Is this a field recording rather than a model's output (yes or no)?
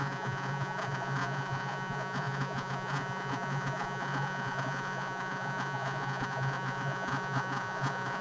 no